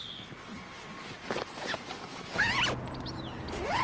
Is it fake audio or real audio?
real